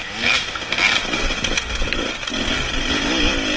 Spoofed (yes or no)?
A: no